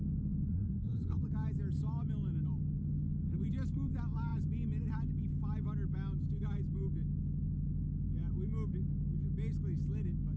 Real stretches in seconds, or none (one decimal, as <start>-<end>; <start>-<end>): 0.0-0.5; 1.2-10.4